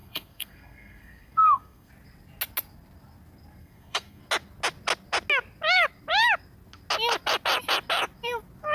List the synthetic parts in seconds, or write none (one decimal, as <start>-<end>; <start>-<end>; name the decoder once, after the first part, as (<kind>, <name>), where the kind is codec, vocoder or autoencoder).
0.0-1.9 (codec, SNAC); 3.6-4.2